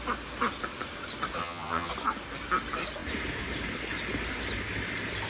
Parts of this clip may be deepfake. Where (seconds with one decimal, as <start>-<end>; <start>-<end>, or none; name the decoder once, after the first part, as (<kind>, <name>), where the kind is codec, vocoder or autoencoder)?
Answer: 1.4-1.9 (vocoder, HiFi-GAN)